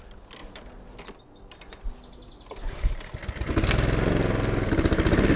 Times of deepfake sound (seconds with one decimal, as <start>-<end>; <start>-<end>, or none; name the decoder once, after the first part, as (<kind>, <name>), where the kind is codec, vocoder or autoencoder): none